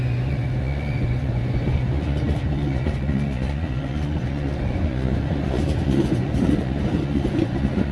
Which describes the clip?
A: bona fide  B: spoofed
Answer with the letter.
B